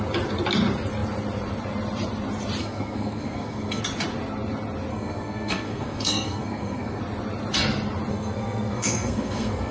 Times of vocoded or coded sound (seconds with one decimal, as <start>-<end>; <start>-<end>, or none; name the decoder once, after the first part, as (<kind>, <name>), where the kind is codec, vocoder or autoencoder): 2.6-3.8 (codec, SNAC); 4.9-7.0; 8.1-9.7